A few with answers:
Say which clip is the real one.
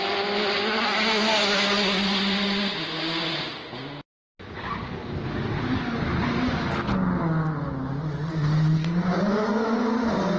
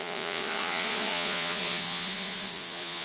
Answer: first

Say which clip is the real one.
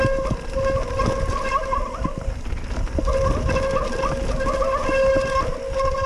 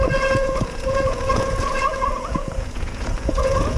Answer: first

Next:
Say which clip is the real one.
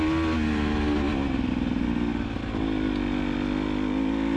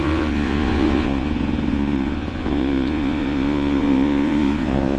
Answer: first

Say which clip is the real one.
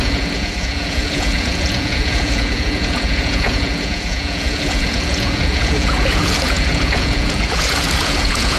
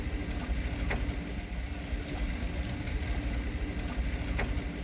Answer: second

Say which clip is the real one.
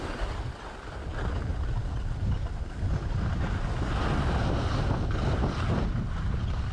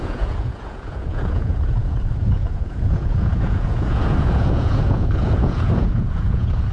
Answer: first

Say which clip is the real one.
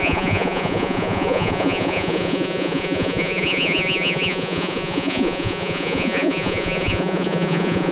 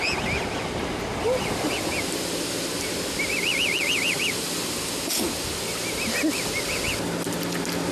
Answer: second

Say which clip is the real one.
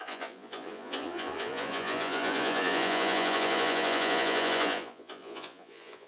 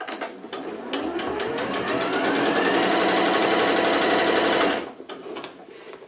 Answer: second